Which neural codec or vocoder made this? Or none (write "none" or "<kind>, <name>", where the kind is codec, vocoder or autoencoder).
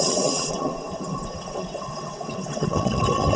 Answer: vocoder, WaveNeXt